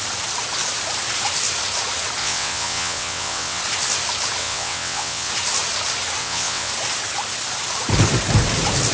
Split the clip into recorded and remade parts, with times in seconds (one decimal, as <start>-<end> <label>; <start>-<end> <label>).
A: 0.0-2.2 recorded; 2.2-3.6 remade; 3.6-4.4 recorded; 4.4-5.3 remade; 5.3-6.2 recorded; 6.2-6.7 remade; 6.7-8.9 recorded